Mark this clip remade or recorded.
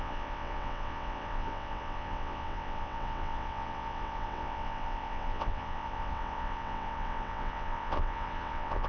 remade